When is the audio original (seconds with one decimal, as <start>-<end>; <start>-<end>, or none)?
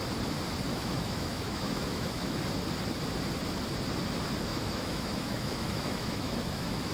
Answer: 0.0-0.7; 2.4-4.5